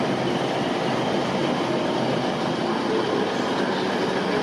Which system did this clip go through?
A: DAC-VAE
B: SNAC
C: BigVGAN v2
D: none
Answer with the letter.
D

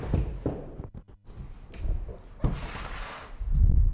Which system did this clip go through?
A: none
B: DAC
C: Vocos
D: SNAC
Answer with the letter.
A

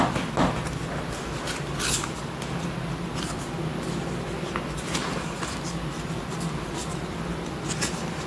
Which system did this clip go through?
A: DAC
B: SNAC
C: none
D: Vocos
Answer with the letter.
C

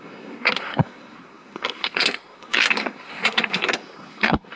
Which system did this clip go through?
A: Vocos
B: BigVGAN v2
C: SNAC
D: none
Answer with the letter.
C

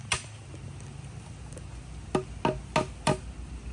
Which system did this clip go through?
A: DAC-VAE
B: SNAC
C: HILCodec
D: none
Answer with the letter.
D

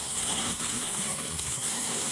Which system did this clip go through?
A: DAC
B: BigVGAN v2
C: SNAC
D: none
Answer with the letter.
C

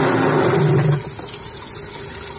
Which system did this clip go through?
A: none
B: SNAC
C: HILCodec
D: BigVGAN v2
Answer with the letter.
A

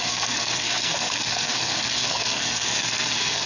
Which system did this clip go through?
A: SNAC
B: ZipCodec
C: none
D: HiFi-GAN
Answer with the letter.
A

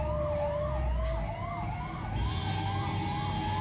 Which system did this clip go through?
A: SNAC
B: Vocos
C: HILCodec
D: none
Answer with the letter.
D